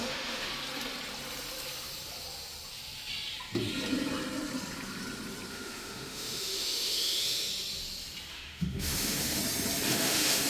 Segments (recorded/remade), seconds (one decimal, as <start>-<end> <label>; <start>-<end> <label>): 0.0-0.5 remade; 0.5-5.5 recorded; 5.5-7.5 remade; 7.5-8.3 recorded; 8.3-9.4 remade; 9.4-9.9 recorded; 9.9-10.5 remade